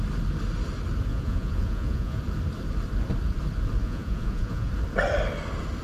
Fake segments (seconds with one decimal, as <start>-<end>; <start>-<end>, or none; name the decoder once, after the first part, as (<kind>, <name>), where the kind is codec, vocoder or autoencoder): 1.1-2.2 (vocoder, Vocos); 3.8-4.7